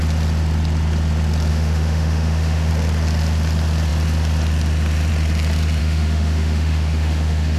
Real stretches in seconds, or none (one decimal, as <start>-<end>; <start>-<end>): 0.0-1.5; 2.7-5.8